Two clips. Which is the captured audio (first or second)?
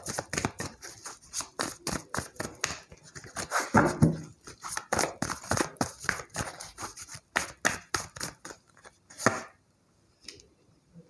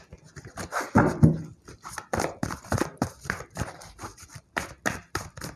first